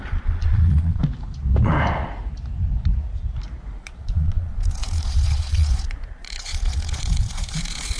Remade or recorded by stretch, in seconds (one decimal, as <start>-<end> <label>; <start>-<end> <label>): 0.0-1.0 remade; 1.0-3.8 recorded; 3.8-8.0 remade